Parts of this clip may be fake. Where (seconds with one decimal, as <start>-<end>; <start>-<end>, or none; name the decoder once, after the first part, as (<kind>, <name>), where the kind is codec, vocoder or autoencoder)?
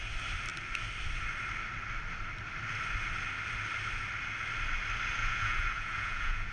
5.2-6.5 (vocoder, Vocos)